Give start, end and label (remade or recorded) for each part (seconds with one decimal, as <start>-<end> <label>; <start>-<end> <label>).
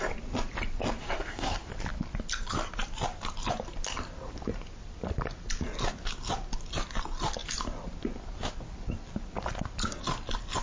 0.0-1.0 recorded; 1.0-1.7 remade; 1.7-10.6 recorded